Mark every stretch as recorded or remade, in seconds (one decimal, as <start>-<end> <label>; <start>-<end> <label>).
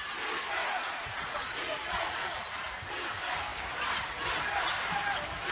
0.0-0.6 recorded; 0.6-2.6 remade; 2.6-5.5 recorded